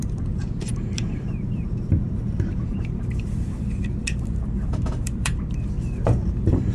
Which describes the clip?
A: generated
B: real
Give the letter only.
A